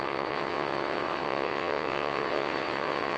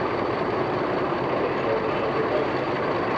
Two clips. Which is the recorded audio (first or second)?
second